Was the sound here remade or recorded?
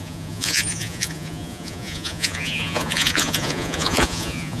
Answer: remade